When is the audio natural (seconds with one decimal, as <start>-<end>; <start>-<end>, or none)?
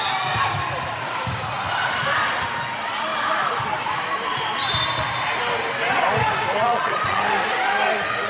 0.0-6.6; 7.2-8.3